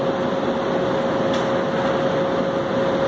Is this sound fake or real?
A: real